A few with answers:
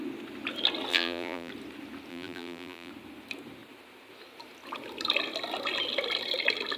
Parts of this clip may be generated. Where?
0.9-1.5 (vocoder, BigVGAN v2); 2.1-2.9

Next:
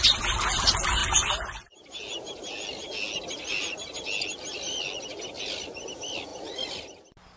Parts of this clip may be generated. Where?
none

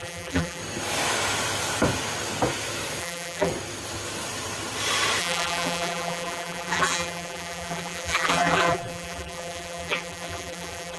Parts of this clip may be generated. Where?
0.0-0.6 (vocoder, BigVGAN v2); 3.0-3.5; 5.2-11.0

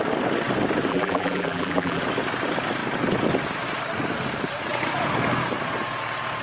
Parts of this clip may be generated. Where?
0.9-2.0 (vocoder, BigVGAN v2)

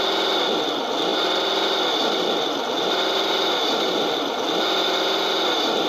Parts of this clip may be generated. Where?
none